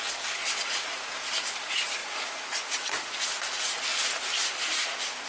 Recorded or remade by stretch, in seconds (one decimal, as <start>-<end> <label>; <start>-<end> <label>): 0.0-3.9 remade; 3.9-5.3 recorded